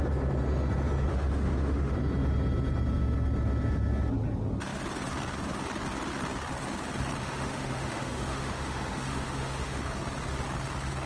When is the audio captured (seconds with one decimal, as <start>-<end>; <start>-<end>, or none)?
0.0-1.1; 1.9-7.2; 9.8-11.1